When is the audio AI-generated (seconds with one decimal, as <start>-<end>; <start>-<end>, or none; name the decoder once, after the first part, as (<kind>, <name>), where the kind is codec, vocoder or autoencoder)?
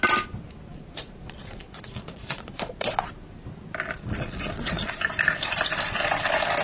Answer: 0.7-3.1 (vocoder, Vocos); 4.1-4.9